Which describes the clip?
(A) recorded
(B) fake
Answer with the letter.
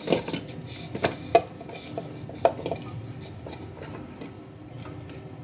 A